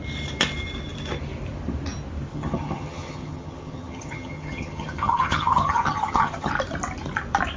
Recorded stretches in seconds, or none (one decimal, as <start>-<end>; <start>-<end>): 0.0-2.3; 6.5-7.6